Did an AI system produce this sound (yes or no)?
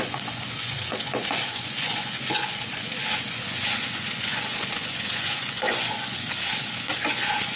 yes